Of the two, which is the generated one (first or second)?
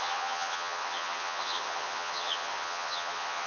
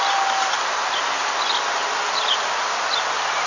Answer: first